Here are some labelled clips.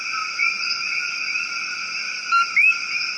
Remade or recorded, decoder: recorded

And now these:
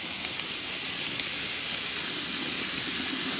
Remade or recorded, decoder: recorded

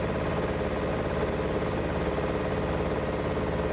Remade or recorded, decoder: recorded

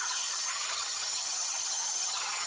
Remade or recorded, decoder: remade, vocoder, HiFi-GAN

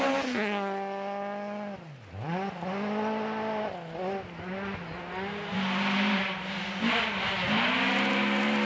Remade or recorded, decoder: recorded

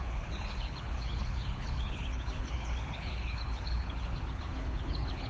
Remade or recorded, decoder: remade, codec, HILCodec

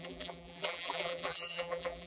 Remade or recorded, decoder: remade, vocoder, BigVGAN v2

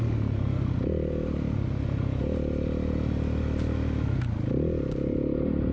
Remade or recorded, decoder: recorded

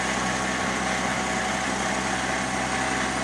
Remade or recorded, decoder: recorded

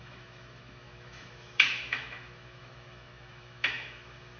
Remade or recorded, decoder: remade, autoencoder, DAC-VAE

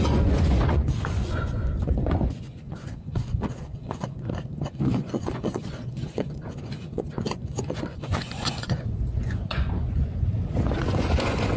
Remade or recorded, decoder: remade, vocoder, Vocos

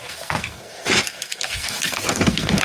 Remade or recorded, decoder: remade, codec, SNAC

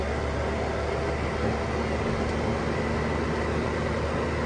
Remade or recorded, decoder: recorded